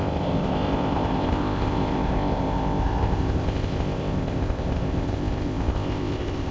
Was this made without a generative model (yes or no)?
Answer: no